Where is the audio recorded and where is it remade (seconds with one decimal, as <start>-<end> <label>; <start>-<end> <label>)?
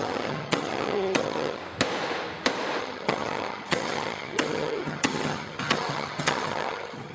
0.0-1.6 remade; 1.6-2.8 recorded; 2.8-7.1 remade